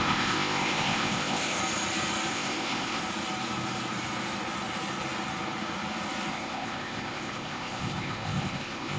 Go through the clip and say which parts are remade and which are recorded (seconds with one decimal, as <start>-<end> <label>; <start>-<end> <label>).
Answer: 0.0-1.6 remade; 1.6-2.3 recorded; 2.3-3.0 remade; 3.0-6.3 recorded; 6.3-9.0 remade